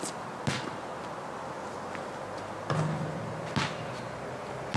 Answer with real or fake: real